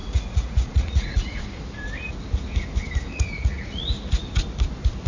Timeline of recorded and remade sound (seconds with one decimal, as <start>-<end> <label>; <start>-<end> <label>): 0.0-1.4 remade; 1.4-3.1 recorded; 3.1-3.8 remade; 3.8-5.1 recorded